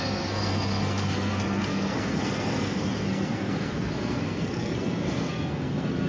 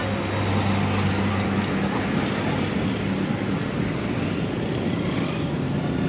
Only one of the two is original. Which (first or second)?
second